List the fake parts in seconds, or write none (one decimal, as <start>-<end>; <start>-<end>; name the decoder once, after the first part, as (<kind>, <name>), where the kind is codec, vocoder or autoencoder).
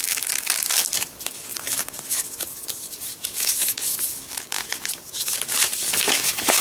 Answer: 0.0-6.6 (codec, DAC)